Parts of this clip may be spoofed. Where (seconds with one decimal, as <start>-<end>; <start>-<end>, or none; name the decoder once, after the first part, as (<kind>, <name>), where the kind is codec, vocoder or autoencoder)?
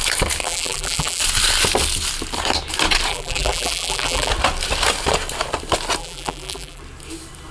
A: 0.4-1.2 (vocoder, BigVGAN v2); 3.1-4.3; 6.0-6.8